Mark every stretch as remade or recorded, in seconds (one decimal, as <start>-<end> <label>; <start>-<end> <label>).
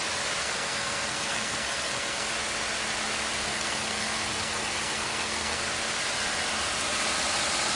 0.0-0.4 recorded; 0.4-2.3 remade; 2.3-3.5 recorded; 3.5-5.6 remade; 5.6-7.8 recorded